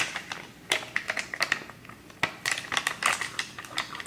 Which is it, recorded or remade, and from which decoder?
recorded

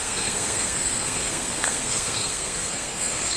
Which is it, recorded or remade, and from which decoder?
remade, codec, SNAC